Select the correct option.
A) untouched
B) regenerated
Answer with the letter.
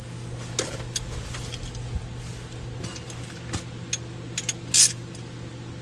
A